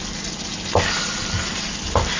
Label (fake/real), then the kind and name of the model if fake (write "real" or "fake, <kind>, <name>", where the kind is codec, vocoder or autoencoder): real